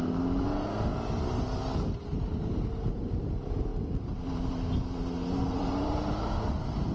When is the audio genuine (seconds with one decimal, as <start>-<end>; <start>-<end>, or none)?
0.0-5.2